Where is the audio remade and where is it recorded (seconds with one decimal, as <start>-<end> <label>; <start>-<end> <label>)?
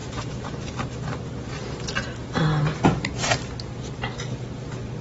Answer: 0.0-5.0 recorded